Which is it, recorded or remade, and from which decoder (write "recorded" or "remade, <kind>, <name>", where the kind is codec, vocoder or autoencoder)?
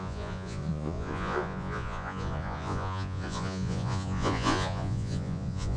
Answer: remade, vocoder, Vocos